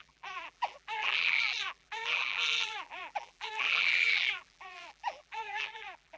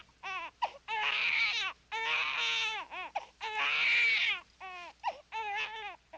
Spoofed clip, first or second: first